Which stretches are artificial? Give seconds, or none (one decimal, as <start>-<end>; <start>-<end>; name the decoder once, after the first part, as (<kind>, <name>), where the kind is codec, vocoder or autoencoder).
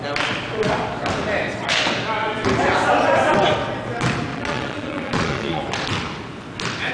4.3-5.6 (vocoder, Vocos)